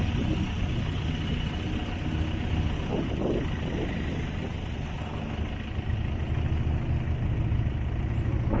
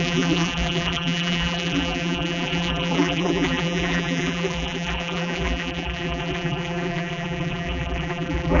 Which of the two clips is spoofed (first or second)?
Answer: second